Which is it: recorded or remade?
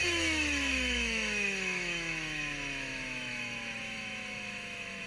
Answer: remade